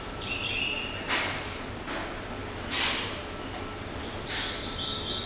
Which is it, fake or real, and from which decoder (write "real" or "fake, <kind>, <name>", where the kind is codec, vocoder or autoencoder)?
real